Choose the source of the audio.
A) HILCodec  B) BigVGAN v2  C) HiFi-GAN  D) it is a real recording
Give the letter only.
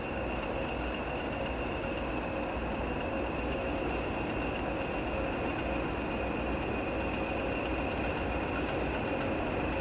D